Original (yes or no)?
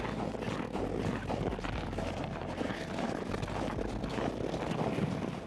yes